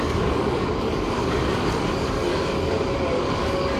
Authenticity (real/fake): fake